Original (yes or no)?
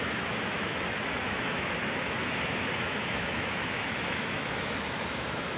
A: no